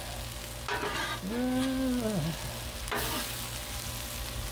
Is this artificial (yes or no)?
no